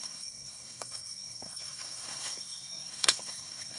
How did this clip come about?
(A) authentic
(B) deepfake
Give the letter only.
B